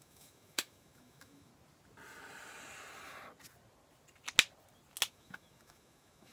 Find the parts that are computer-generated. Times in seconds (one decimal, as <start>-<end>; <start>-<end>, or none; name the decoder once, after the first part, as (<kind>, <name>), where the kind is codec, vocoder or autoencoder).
0.0-1.5 (autoencoder, DAC-VAE); 5.1-6.3